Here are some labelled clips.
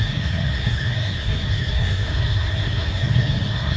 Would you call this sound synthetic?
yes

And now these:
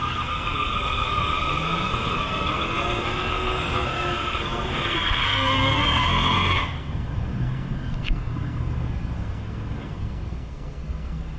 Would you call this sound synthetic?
yes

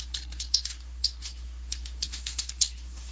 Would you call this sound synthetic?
yes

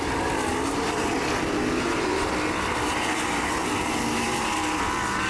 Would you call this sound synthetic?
no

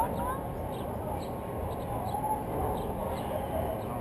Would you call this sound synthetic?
no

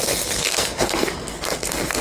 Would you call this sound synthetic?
yes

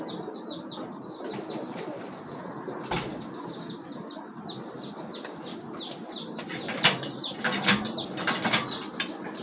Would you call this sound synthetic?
no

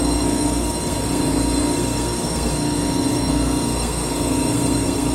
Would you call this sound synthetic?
yes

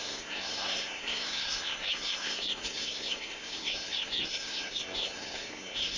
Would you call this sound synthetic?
yes